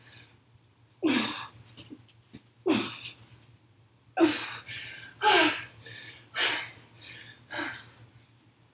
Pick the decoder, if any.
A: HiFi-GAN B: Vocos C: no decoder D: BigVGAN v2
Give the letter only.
C